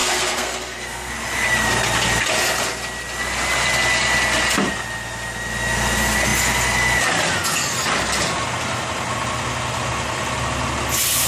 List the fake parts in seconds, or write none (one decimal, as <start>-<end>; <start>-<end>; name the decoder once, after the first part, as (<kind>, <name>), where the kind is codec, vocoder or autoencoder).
0.0-1.1 (codec, SNAC)